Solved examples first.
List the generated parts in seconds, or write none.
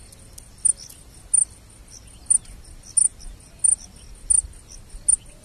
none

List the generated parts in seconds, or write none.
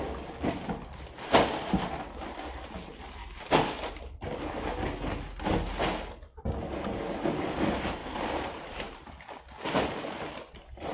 8.0-9.1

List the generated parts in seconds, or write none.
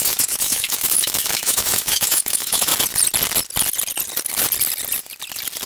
0.0-2.7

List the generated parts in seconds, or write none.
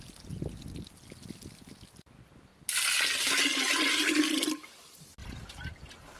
5.2-5.7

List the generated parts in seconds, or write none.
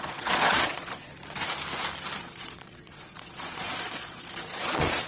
0.0-1.1; 2.2-5.1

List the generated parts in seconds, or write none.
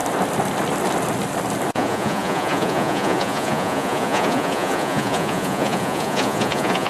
1.7-6.9